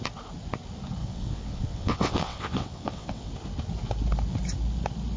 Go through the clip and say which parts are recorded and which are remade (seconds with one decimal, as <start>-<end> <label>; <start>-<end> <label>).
0.0-1.0 recorded; 1.0-3.3 remade; 3.3-5.2 recorded